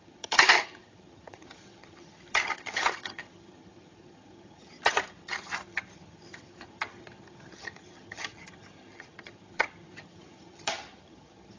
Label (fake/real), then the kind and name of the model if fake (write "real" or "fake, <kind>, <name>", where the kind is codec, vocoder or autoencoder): fake, vocoder, HiFi-GAN